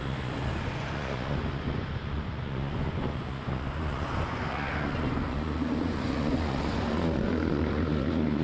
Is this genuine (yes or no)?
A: no